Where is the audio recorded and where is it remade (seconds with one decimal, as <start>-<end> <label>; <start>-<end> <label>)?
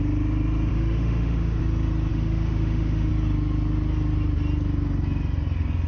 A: 0.0-0.7 recorded; 0.7-1.6 remade; 1.6-2.1 recorded; 2.1-3.1 remade; 3.1-5.9 recorded